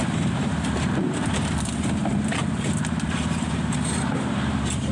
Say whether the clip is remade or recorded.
remade